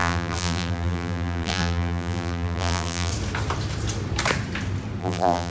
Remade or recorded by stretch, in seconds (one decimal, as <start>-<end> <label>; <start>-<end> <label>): 0.0-3.1 remade; 3.1-5.0 recorded; 5.0-5.5 remade